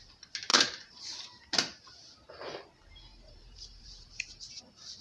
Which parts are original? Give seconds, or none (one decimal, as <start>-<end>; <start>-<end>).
0.0-0.5; 1.0-3.1; 4.6-5.0